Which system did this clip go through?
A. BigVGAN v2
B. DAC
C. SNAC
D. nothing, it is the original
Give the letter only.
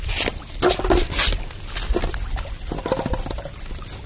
D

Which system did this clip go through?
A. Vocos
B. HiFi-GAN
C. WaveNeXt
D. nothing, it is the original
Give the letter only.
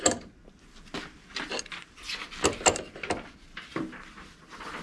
D